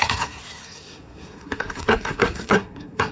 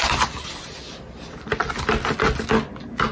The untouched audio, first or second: second